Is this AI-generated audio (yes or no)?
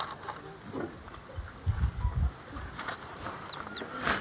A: no